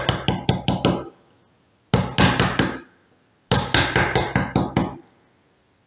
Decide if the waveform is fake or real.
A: real